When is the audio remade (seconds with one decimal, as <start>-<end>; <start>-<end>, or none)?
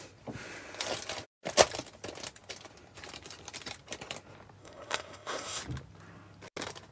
4.6-5.6